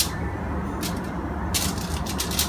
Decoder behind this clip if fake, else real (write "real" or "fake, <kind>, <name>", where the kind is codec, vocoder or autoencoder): real